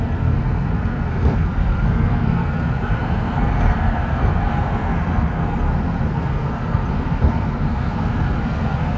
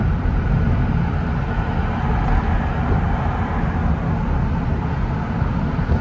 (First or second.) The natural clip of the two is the second